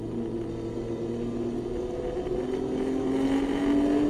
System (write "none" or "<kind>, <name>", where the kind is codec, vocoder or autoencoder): none